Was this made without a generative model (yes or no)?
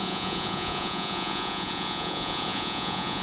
no